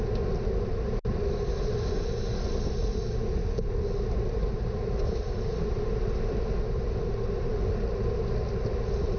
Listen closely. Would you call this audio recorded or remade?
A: recorded